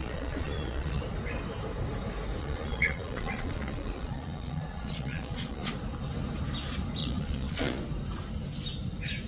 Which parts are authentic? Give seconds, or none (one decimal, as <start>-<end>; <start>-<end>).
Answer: 1.0-2.4; 5.7-7.0; 7.8-9.3